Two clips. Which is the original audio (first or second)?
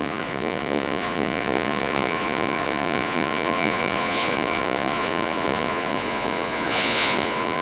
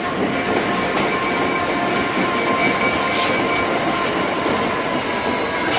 second